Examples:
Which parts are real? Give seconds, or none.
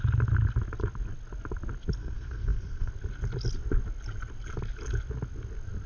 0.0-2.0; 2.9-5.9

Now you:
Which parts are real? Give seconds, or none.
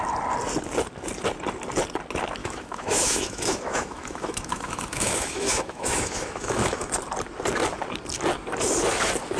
0.0-2.4; 6.9-9.4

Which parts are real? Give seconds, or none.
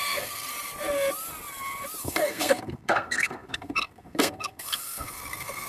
0.5-2.0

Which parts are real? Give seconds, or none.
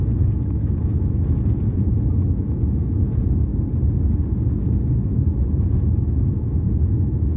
3.5-5.4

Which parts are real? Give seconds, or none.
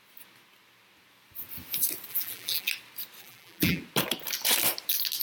0.0-2.1; 2.7-3.2; 3.8-5.2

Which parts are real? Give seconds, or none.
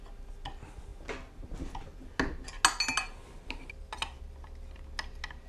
0.0-5.5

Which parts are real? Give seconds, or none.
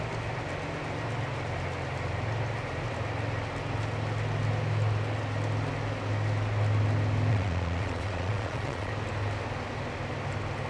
0.0-7.3; 8.9-10.7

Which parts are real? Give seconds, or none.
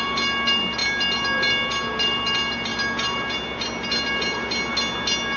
0.0-5.4